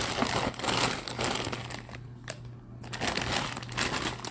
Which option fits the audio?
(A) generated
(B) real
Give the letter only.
B